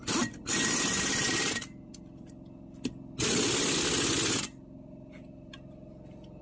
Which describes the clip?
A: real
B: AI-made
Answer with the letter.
A